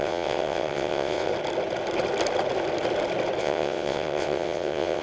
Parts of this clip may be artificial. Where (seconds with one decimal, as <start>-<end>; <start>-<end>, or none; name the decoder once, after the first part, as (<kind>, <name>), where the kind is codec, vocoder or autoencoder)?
0.0-1.3 (vocoder, WaveNeXt); 3.4-5.0